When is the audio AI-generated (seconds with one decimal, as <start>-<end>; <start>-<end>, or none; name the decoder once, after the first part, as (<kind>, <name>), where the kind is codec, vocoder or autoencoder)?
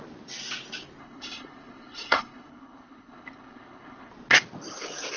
1.0-4.1 (codec, HILCodec)